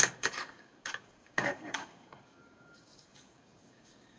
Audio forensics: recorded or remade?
remade